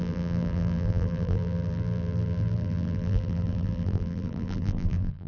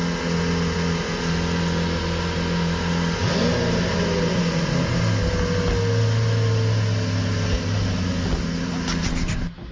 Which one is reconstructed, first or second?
first